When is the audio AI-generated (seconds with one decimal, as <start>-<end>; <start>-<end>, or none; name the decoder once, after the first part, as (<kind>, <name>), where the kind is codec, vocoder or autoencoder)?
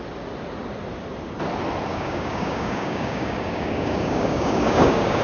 1.9-5.2 (codec, DAC)